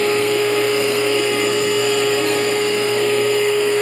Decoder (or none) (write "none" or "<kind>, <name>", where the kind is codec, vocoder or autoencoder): codec, SNAC